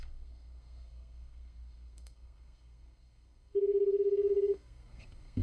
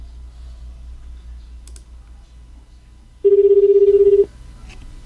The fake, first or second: first